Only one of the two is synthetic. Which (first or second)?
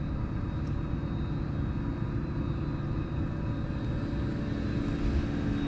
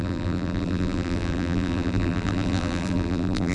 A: second